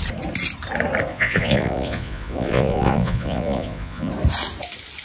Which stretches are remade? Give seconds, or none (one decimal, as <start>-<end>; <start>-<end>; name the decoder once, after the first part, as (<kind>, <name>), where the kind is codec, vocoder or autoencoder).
1.1-4.1 (vocoder, Vocos)